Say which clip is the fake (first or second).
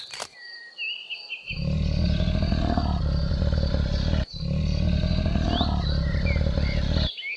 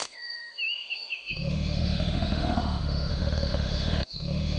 second